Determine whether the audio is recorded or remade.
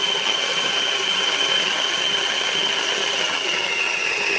remade